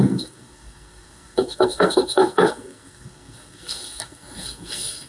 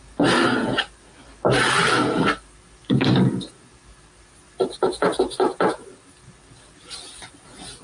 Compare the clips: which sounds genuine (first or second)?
second